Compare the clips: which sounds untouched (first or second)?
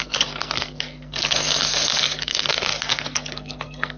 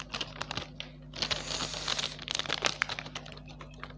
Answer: second